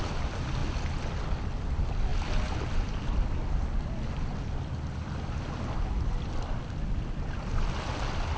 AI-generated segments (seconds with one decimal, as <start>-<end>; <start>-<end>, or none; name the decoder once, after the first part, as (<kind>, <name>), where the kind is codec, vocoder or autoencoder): none